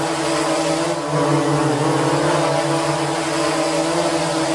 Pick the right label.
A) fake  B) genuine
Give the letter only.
B